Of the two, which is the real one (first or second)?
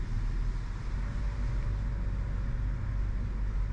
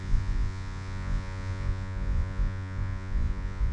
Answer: first